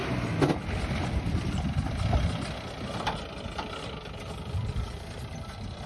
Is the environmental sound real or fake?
real